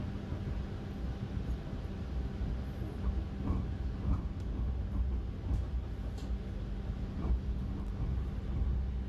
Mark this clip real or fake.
real